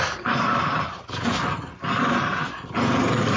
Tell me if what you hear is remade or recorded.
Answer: recorded